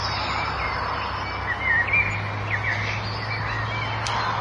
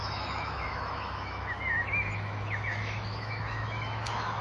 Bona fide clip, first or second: first